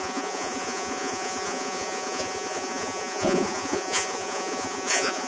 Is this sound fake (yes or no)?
yes